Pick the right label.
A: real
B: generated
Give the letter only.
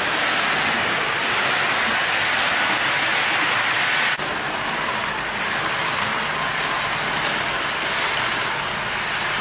A